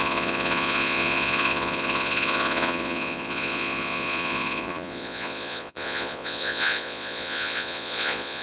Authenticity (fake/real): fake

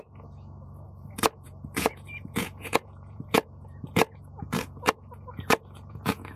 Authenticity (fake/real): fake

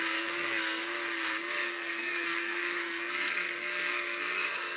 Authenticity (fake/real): fake